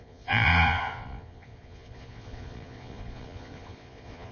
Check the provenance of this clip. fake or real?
fake